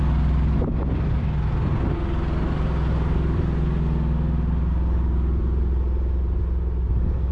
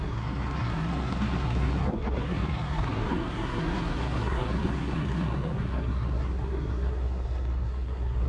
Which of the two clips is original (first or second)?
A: first